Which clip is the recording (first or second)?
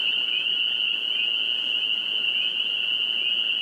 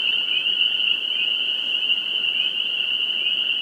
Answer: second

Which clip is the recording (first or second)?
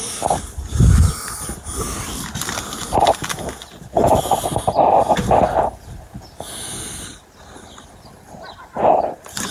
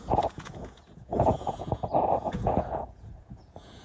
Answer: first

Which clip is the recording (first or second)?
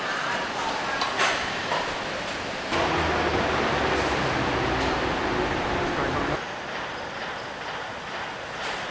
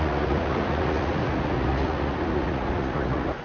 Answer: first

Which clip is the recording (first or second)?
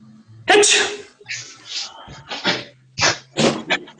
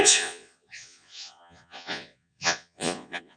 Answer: first